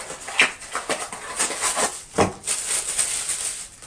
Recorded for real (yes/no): yes